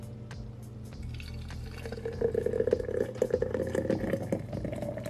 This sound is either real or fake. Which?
real